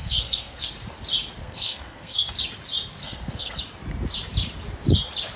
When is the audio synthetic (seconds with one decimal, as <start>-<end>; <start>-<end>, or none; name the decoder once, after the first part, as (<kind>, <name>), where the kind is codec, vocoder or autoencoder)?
0.0-0.7 (codec, SNAC); 1.4-2.3; 3.0-3.6